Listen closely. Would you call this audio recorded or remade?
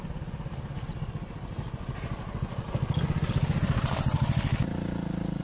recorded